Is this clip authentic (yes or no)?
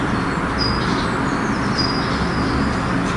yes